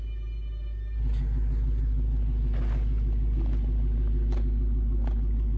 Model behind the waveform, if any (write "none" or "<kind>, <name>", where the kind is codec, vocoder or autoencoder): none